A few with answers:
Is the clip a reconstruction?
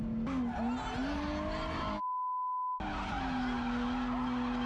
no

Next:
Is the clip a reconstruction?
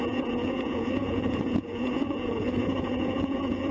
yes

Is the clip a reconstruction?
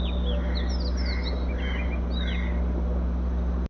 no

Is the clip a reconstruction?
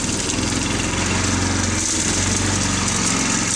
no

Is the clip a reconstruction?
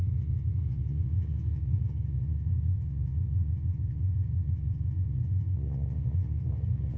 yes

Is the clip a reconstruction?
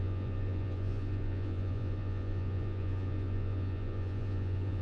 yes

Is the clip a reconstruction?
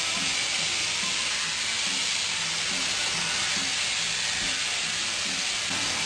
no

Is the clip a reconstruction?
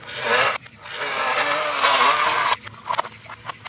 no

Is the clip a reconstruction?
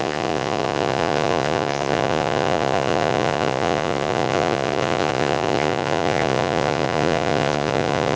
yes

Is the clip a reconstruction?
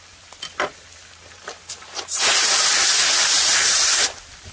no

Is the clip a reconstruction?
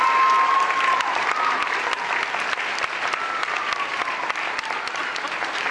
no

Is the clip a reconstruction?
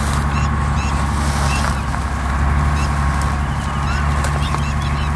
no